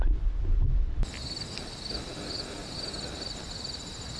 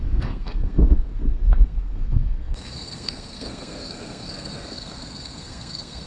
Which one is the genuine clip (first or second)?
first